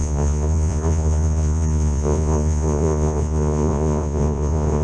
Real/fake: fake